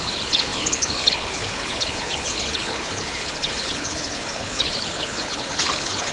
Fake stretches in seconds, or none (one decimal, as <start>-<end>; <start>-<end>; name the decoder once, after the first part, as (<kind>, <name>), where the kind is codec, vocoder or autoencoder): 0.0-6.1 (codec, HILCodec)